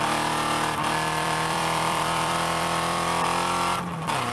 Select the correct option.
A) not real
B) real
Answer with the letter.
A